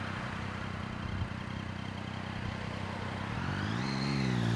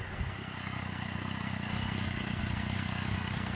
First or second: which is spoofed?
second